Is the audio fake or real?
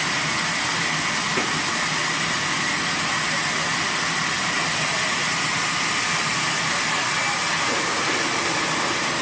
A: real